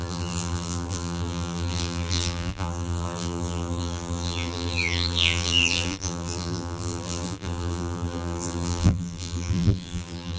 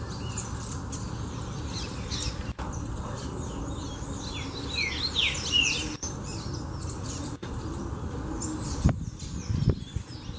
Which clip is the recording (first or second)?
second